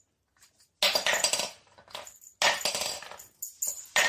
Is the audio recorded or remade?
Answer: recorded